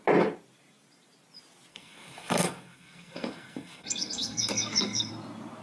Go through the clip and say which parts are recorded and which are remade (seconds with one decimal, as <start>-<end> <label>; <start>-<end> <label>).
0.0-1.7 recorded; 1.7-5.1 remade; 5.1-5.6 recorded